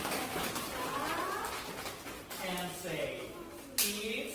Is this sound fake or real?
real